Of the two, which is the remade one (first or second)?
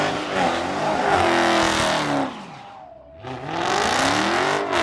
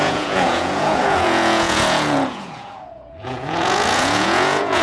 second